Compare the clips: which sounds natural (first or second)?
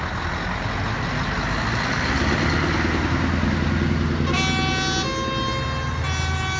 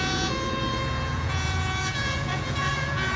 first